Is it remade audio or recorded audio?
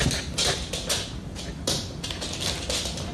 recorded